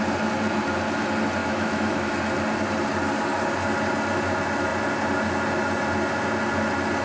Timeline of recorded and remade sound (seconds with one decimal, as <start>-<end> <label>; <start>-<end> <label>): 0.0-1.4 recorded; 1.4-2.1 remade; 2.1-7.0 recorded